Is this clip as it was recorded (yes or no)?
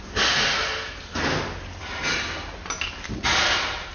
yes